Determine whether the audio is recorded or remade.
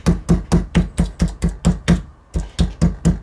recorded